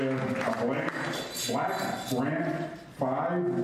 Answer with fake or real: real